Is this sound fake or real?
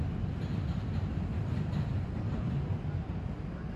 real